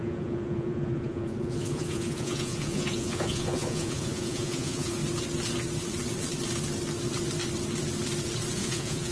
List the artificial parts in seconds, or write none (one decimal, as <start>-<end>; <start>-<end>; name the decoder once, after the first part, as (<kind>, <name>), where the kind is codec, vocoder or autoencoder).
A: 0.0-5.0 (vocoder, Vocos); 8.5-9.1